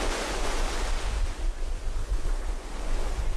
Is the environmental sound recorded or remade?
remade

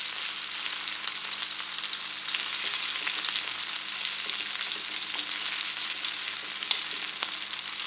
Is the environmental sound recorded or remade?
recorded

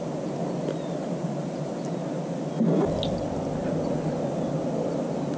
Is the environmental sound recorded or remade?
recorded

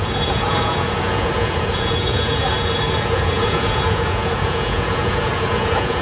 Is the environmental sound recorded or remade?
remade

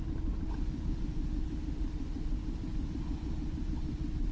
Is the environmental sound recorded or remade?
recorded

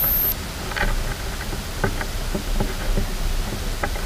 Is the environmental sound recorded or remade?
recorded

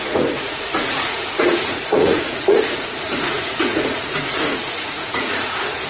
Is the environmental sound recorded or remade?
remade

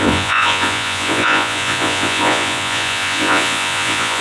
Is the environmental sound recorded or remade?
remade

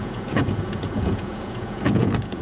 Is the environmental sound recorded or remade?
remade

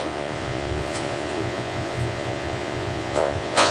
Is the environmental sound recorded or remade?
remade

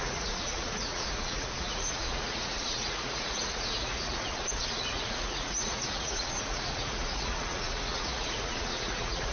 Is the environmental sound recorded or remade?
remade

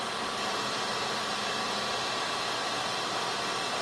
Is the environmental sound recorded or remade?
recorded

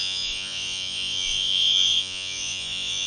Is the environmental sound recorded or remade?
remade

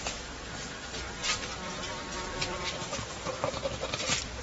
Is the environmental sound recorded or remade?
recorded